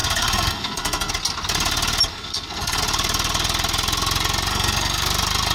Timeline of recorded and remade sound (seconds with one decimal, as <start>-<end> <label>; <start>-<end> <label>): 0.0-1.1 remade; 1.1-2.1 recorded; 2.1-2.8 remade; 2.8-4.5 recorded; 4.5-5.1 remade; 5.1-5.5 recorded